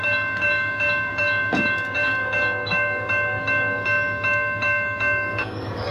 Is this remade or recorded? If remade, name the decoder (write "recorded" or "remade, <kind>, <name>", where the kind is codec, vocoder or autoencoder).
remade, codec, DAC